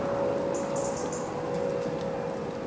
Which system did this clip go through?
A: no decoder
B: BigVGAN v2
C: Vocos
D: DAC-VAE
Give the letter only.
A